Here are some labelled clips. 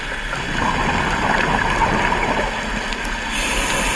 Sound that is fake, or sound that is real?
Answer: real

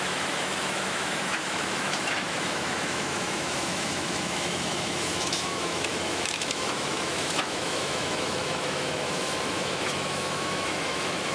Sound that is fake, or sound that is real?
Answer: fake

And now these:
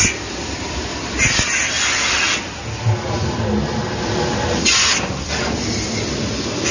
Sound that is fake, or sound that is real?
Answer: real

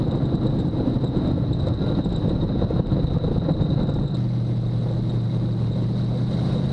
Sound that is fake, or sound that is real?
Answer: real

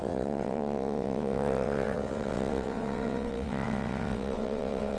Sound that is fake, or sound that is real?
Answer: fake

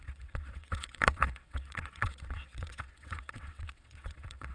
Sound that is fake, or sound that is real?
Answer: fake